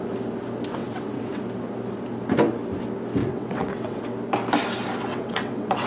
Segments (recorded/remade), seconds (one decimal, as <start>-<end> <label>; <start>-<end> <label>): 0.0-0.8 recorded; 0.8-1.4 remade; 1.4-3.2 recorded; 3.2-4.0 remade; 4.0-5.1 recorded; 5.1-5.9 remade